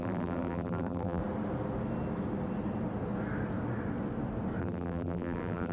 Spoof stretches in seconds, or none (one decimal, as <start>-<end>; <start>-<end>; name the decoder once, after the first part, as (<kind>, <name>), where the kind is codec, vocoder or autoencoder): 0.0-1.2 (vocoder, BigVGAN v2); 4.6-5.7